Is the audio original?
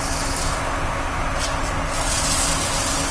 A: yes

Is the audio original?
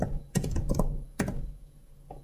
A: no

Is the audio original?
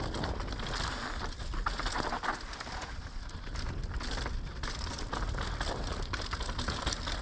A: yes